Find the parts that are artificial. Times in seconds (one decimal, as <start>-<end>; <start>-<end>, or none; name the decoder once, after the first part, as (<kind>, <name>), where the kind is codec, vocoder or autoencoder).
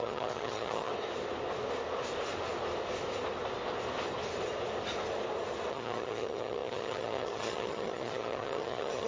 0.0-0.9 (vocoder, HiFi-GAN); 5.7-9.1